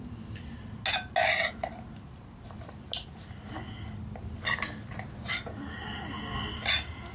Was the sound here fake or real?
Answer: real